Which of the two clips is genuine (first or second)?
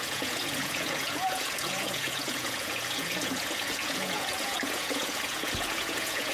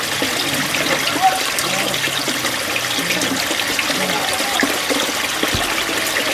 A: second